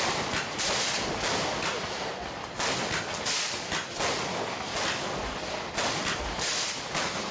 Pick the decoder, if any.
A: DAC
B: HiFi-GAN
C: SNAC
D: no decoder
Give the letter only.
D